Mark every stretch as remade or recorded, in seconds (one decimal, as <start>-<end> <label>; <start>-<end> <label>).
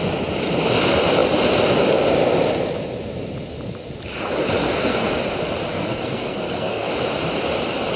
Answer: 0.0-4.6 recorded; 4.6-5.2 remade; 5.2-5.7 recorded; 5.7-6.9 remade; 6.9-8.0 recorded